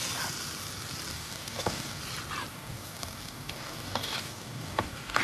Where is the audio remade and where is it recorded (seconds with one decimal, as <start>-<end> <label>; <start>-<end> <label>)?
0.0-1.1 recorded; 1.1-2.0 remade; 2.0-2.5 recorded; 2.5-5.2 remade